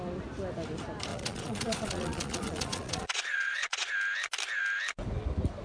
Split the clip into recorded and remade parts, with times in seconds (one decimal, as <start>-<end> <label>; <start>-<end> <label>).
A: 0.0-1.1 recorded; 1.1-3.9 remade; 3.9-5.6 recorded